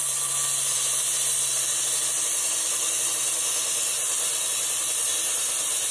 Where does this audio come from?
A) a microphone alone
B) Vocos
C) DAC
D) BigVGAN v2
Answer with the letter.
A